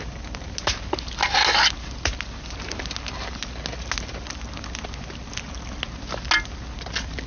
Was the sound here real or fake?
real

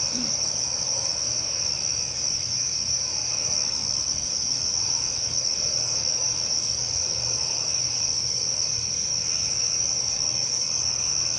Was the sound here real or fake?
fake